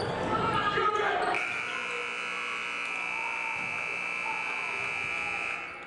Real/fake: real